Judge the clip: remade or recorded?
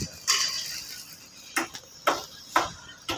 recorded